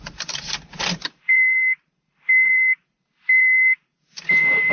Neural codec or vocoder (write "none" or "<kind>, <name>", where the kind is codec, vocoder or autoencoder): vocoder, BigVGAN v2